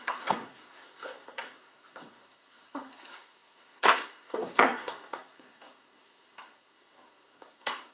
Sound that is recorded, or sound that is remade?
remade